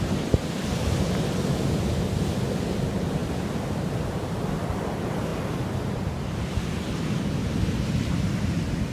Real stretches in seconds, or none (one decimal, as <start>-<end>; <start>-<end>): 0.0-3.2; 4.4-8.9